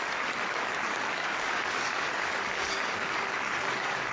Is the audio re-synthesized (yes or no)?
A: yes